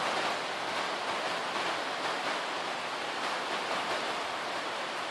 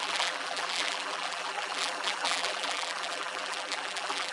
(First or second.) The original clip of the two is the first